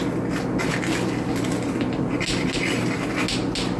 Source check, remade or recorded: recorded